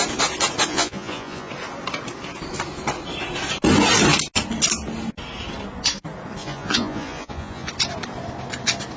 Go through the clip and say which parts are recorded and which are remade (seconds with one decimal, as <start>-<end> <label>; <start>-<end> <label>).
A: 0.0-0.7 recorded; 0.7-1.5 remade; 1.5-6.4 recorded; 6.4-7.7 remade; 7.7-9.0 recorded